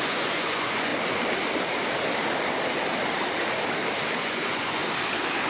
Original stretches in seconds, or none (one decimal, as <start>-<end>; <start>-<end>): 0.9-4.2; 4.8-5.5